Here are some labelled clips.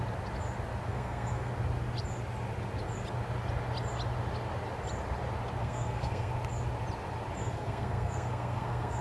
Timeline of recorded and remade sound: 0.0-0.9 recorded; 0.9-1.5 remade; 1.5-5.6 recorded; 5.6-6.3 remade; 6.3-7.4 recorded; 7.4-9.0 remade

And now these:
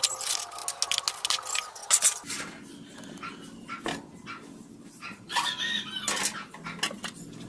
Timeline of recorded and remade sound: 0.0-7.5 recorded

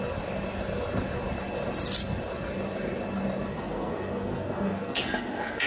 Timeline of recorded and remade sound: 0.0-3.5 recorded; 3.5-5.7 remade

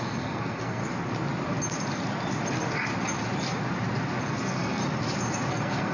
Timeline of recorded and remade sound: 0.0-0.8 remade; 0.8-4.3 recorded; 4.3-4.8 remade; 4.8-5.5 recorded; 5.5-5.9 remade

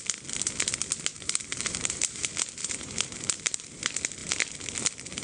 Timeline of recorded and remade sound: 0.0-1.1 recorded; 1.1-2.1 remade; 2.1-2.6 recorded; 2.6-3.8 remade; 3.8-5.2 recorded